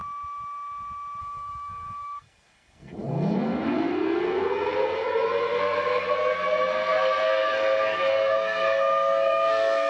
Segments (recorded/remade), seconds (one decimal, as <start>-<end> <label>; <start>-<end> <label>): 0.0-1.2 recorded; 1.2-9.9 remade